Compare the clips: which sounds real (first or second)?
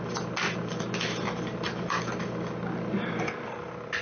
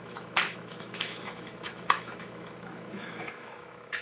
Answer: first